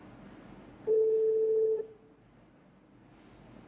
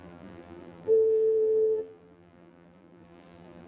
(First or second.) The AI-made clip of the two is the second